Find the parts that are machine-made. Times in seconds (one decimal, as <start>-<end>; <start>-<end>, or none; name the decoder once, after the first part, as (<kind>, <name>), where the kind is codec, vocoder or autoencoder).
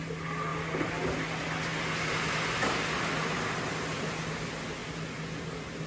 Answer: none